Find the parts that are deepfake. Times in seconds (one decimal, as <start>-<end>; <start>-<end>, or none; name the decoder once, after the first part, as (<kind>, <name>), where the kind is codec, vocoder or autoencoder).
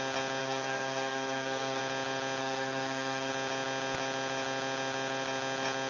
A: 0.4-1.8 (codec, SNAC); 2.4-3.3